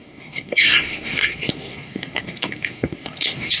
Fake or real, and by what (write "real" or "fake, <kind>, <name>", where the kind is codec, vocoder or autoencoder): fake, codec, SNAC